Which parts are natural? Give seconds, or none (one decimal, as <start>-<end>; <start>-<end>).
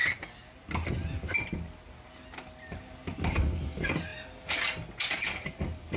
0.0-6.0